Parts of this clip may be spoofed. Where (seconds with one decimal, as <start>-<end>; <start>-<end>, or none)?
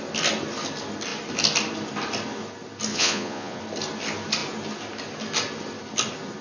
2.9-3.6